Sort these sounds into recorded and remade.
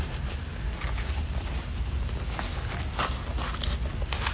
recorded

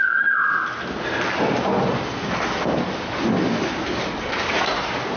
recorded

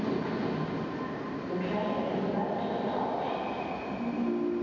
recorded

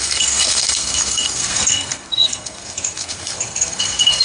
remade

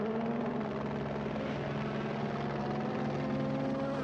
recorded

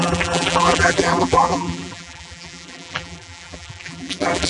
remade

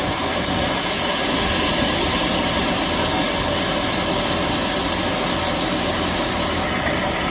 recorded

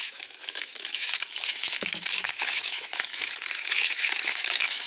remade